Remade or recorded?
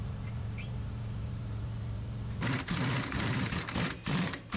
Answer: remade